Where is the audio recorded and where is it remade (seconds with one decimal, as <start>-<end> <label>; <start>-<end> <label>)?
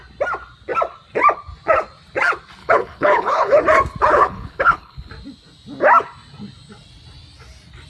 0.0-2.6 recorded; 2.6-3.6 remade; 3.6-4.1 recorded; 4.1-5.1 remade; 5.1-7.9 recorded